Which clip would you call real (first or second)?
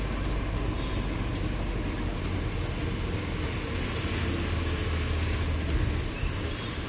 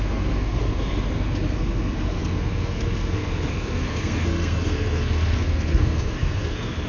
first